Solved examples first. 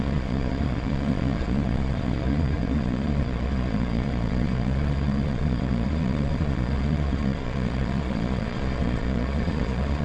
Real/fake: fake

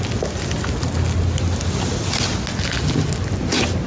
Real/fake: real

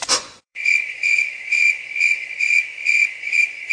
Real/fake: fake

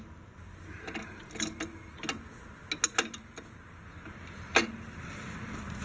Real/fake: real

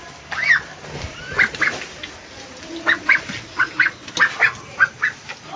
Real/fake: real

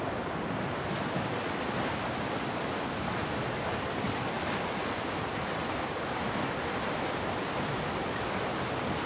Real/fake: real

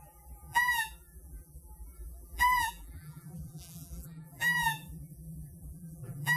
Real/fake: fake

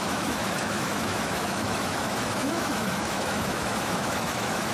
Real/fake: fake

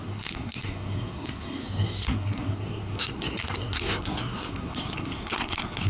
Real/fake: fake